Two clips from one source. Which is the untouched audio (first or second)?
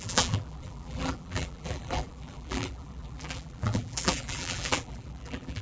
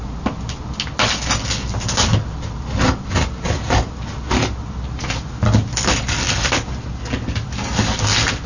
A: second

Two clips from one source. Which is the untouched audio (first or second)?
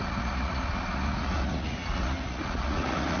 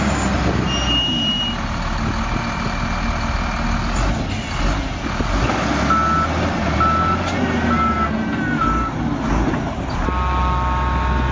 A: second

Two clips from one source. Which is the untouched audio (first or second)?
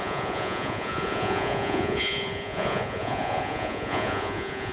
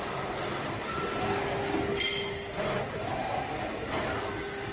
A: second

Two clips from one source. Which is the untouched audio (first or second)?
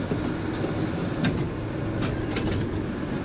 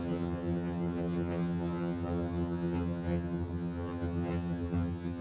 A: first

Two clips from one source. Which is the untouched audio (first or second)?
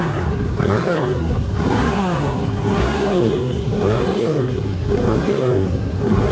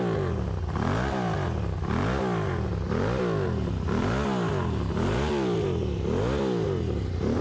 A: second